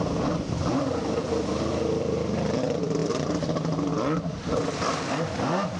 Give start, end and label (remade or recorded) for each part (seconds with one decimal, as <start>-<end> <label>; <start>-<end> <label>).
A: 0.0-5.8 recorded